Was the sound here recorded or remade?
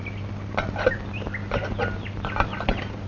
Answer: recorded